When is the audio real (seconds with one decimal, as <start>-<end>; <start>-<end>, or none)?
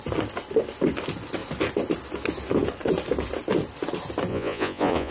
0.0-4.3